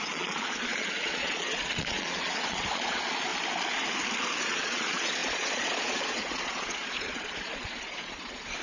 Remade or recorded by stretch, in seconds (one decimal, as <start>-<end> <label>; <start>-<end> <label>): 0.0-3.3 remade; 3.3-4.4 recorded; 4.4-8.6 remade